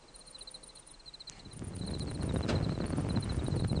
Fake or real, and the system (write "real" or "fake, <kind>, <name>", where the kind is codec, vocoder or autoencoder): real